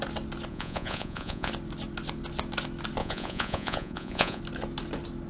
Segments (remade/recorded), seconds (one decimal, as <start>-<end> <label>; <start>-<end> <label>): 0.0-0.5 recorded; 0.5-1.5 remade; 1.5-3.0 recorded; 3.0-4.4 remade; 4.4-5.3 recorded